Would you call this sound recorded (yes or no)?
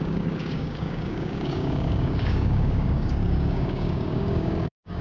no